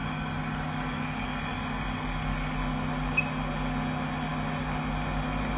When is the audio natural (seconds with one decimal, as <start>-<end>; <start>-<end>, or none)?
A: 0.0-5.6